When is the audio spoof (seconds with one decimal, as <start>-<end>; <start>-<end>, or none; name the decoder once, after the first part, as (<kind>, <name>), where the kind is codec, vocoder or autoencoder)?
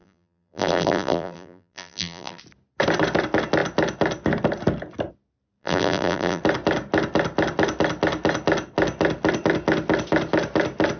0.0-2.4 (vocoder, BigVGAN v2); 5.6-6.4